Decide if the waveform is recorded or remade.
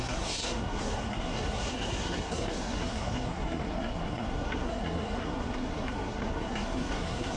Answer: remade